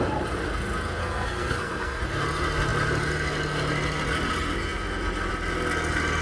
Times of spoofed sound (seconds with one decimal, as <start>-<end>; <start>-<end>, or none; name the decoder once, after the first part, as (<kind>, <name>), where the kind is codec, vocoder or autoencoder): 1.0-2.0 (codec, SNAC)